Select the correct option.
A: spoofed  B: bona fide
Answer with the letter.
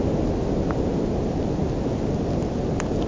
B